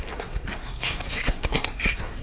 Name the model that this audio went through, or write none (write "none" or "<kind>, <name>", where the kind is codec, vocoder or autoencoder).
codec, SNAC